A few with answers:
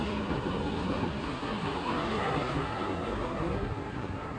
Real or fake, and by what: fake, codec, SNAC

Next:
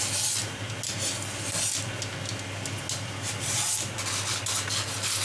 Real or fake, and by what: real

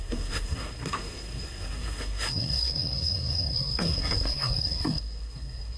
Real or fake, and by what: fake, codec, SNAC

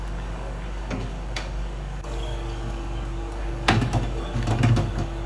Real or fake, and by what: fake, codec, DAC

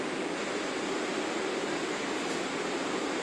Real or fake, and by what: real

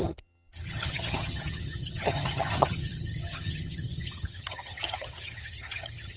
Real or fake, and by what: fake, vocoder, HiFi-GAN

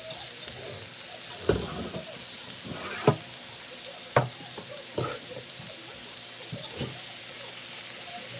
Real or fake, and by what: real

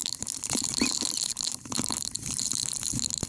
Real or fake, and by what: fake, vocoder, BigVGAN v2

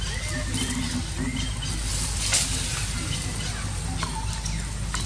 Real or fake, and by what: real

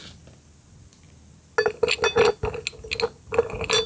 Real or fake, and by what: real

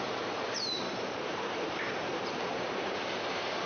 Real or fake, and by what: fake, vocoder, BigVGAN v2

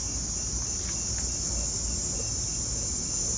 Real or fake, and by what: real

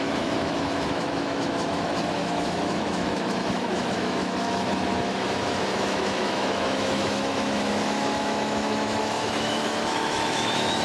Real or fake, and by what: fake, autoencoder, DAC-VAE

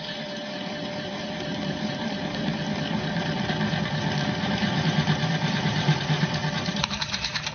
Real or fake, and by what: fake, vocoder, BigVGAN v2